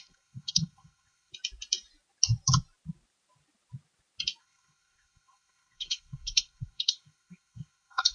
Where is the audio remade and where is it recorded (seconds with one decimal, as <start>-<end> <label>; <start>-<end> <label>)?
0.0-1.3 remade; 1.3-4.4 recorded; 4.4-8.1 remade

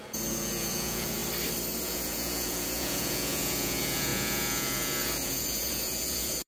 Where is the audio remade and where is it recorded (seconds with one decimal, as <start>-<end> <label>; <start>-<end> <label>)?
0.0-1.2 remade; 1.2-1.8 recorded; 1.8-6.5 remade

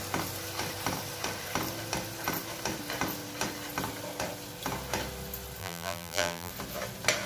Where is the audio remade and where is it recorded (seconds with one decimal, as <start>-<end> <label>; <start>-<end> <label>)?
0.0-5.6 recorded; 5.6-6.5 remade; 6.5-7.3 recorded

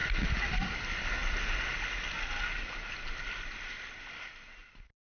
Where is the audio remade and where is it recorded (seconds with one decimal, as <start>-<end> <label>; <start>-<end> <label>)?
0.0-5.0 recorded

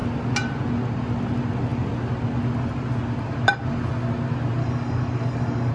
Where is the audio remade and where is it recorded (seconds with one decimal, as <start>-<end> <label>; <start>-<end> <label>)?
0.0-4.6 recorded; 4.6-5.7 remade

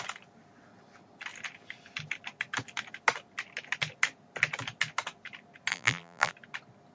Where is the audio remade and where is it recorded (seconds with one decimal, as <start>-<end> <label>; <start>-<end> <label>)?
0.0-5.7 recorded; 5.7-6.3 remade; 6.3-6.9 recorded

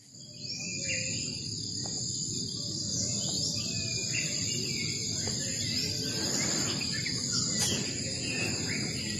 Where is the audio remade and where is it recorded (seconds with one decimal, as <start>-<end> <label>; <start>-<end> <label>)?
0.0-9.2 recorded

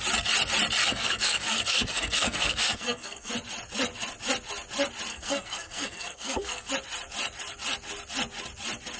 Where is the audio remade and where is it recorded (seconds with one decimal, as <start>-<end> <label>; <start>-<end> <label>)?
0.0-0.8 recorded; 0.8-3.3 remade; 3.3-5.1 recorded; 5.1-6.7 remade; 6.7-9.0 recorded